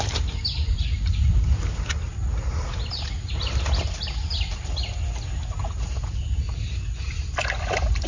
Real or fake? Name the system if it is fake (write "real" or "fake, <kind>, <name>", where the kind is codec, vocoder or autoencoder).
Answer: real